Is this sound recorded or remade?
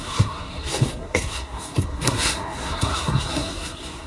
remade